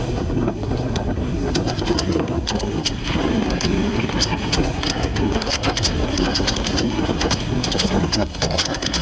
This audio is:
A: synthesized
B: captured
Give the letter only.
A